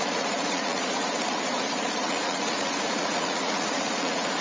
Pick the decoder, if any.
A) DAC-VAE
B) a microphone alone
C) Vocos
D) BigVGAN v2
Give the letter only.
C